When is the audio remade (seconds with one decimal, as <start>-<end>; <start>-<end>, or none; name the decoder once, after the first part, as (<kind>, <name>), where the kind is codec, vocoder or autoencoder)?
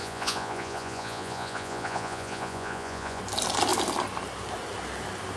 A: 0.0-3.2 (vocoder, Vocos)